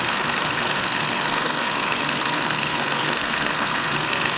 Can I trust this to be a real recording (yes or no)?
no